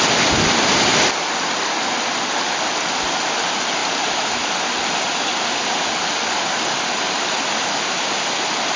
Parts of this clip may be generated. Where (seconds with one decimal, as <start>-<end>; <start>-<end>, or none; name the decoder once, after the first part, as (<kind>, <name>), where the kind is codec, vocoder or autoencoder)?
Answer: 3.8-5.8 (vocoder, BigVGAN v2)